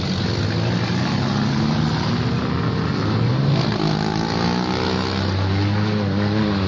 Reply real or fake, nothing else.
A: real